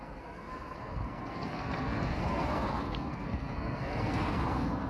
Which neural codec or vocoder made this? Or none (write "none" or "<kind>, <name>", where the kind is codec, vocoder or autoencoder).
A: codec, SNAC